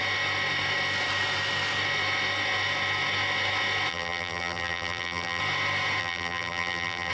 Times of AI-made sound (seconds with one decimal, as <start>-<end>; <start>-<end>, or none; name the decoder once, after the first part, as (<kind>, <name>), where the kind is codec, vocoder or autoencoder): 3.9-5.4 (vocoder, BigVGAN v2); 6.0-7.1